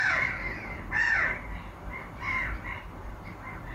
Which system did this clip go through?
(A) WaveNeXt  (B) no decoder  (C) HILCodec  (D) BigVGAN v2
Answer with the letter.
D